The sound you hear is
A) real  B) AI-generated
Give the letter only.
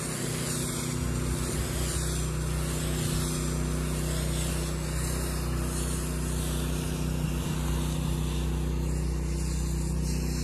A